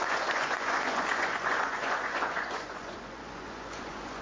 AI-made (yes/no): yes